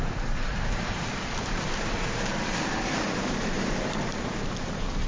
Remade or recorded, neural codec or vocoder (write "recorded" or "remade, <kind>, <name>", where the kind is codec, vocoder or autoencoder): remade, vocoder, BigVGAN v2